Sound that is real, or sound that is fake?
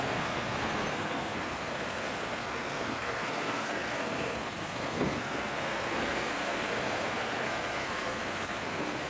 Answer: fake